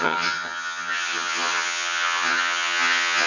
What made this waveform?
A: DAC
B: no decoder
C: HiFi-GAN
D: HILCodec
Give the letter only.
C